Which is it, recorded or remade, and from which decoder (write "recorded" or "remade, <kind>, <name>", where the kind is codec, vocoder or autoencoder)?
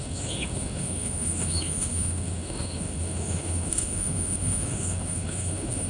remade, autoencoder, DAC-VAE